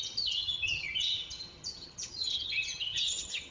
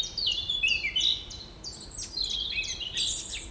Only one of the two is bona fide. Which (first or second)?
second